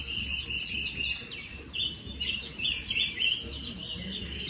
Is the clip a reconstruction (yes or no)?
no